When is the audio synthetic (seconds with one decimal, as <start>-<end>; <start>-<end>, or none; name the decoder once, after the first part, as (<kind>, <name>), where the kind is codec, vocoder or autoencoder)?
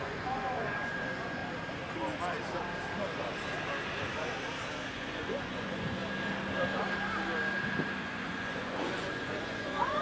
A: 0.0-1.4 (vocoder, Vocos); 4.9-6.0; 8.0-10.0